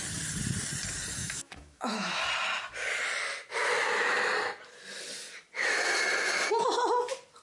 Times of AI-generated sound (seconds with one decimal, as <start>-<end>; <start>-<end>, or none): 1.2-2.2